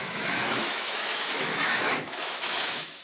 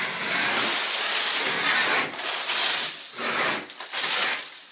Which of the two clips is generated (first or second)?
first